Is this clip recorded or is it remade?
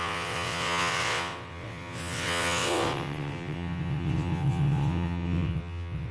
remade